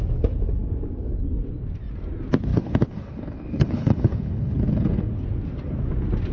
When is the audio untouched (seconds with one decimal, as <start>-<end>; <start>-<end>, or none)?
0.0-2.5; 5.1-6.3